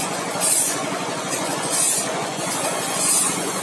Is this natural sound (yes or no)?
no